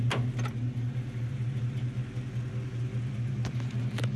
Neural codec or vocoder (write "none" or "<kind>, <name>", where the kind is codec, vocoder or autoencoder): none